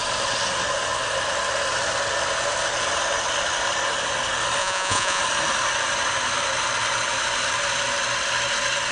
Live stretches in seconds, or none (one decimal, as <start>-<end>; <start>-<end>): 0.0-4.6; 5.2-8.9